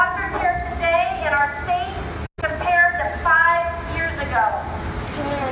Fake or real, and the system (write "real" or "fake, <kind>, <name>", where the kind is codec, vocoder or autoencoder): real